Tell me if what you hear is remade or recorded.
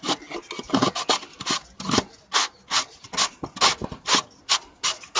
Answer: recorded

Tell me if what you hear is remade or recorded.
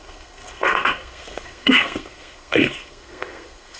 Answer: remade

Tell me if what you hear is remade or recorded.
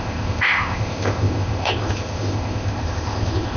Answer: remade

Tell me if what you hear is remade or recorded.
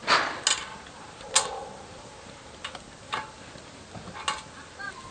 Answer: recorded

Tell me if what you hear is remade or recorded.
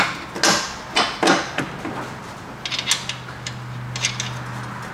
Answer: recorded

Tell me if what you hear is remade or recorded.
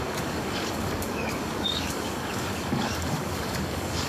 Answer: remade